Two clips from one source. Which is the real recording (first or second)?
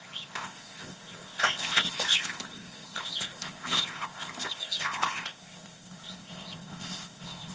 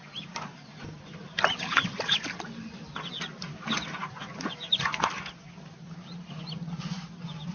second